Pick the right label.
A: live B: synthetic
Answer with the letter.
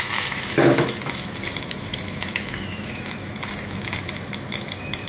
B